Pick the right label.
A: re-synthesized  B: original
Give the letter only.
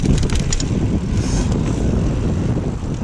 B